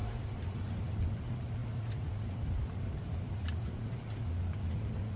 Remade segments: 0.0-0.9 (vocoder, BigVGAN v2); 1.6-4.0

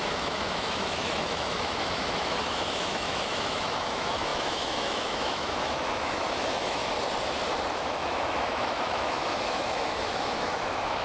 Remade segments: 0.0-6.8 (autoencoder, DAC-VAE); 7.7-11.0

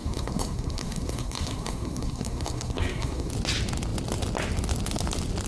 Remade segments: 0.0-3.3 (codec, SNAC)